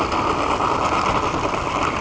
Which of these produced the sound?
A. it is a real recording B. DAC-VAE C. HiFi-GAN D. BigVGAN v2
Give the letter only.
A